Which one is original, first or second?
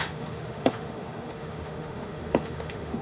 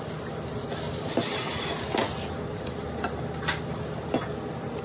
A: second